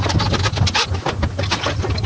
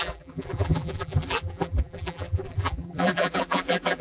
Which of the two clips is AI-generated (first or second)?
second